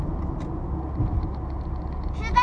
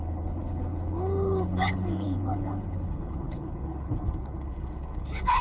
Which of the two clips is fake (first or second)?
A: second